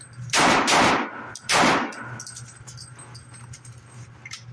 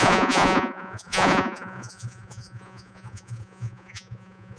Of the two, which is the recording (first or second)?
first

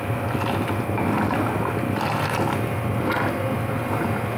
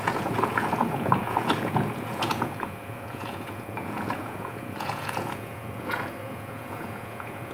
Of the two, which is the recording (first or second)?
first